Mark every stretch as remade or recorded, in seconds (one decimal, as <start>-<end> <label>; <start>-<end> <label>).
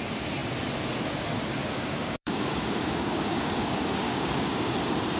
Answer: 0.0-1.6 recorded; 1.6-4.7 remade; 4.7-5.2 recorded